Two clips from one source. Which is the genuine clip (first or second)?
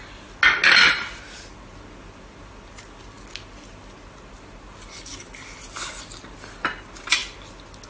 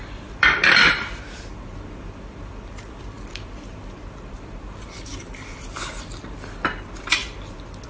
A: first